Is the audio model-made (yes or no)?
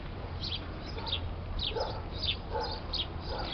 no